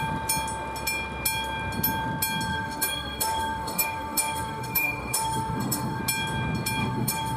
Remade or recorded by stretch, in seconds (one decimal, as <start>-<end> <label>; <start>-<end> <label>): 0.0-2.5 recorded; 2.5-6.0 remade; 6.0-6.8 recorded; 6.8-7.4 remade